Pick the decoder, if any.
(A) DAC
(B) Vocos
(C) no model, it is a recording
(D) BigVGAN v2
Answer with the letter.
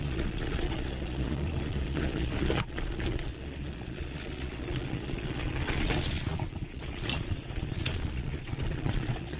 B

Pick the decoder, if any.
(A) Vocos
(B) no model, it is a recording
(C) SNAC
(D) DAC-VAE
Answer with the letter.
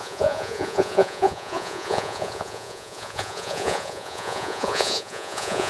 A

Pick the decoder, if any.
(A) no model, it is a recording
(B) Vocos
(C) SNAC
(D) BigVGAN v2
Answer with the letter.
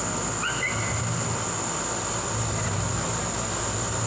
A